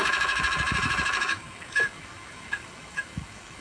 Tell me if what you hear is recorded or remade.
remade